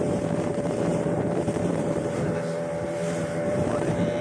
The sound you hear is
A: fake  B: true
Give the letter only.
A